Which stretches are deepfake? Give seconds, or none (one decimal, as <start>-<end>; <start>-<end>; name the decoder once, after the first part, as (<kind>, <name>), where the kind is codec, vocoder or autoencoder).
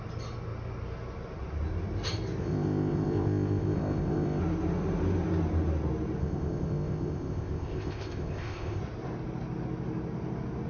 2.4-4.4 (codec, ZipCodec); 6.2-8.8